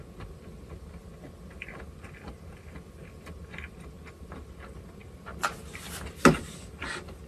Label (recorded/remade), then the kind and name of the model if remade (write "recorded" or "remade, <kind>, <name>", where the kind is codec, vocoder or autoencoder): recorded